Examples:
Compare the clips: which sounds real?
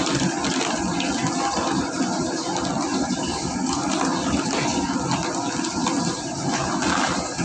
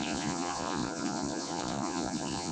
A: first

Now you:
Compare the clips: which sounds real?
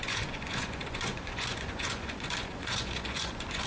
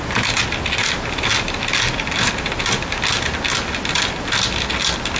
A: second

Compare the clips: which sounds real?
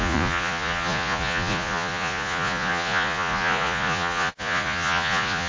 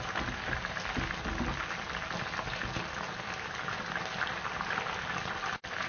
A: second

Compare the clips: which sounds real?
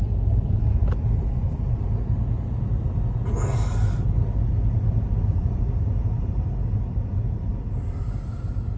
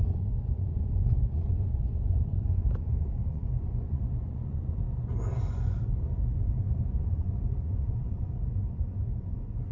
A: first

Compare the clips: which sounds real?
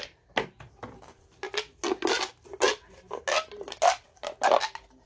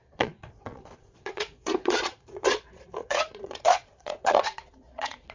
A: first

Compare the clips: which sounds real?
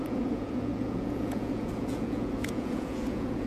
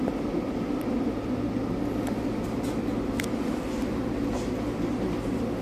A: second